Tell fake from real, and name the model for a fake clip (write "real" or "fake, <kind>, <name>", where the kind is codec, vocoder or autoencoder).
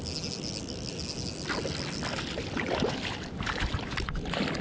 real